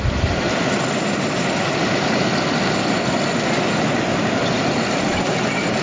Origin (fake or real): real